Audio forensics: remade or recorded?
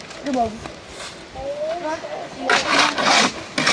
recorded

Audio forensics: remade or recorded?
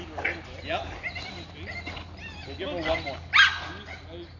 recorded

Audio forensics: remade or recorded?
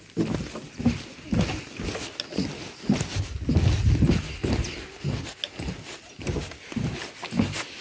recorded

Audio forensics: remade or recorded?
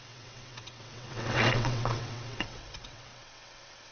remade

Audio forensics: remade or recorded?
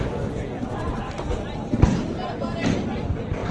recorded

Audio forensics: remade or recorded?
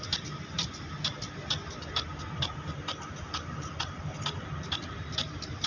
recorded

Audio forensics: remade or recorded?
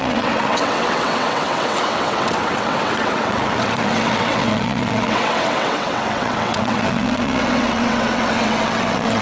remade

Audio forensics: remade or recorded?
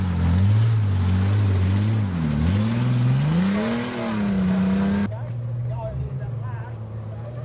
recorded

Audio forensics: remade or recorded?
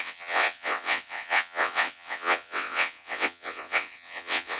remade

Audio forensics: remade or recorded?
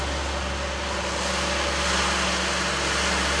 recorded